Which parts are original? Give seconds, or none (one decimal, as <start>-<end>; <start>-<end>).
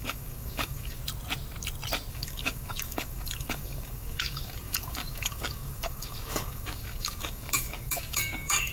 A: 1.0-2.1